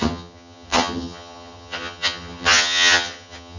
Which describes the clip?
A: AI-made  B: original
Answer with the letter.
A